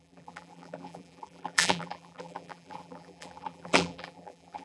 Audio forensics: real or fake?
fake